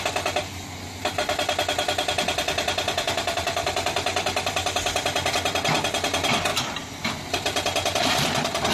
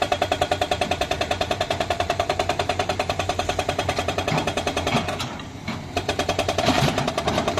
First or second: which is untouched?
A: first